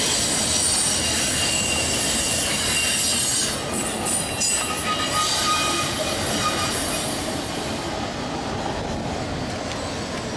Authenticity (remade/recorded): recorded